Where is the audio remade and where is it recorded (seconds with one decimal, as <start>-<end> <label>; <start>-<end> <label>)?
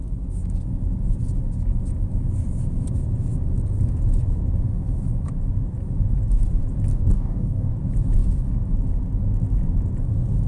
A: 0.0-6.9 recorded; 6.9-7.7 remade; 7.7-10.5 recorded